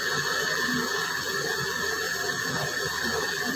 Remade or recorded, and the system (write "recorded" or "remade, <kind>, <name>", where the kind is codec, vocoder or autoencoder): remade, vocoder, BigVGAN v2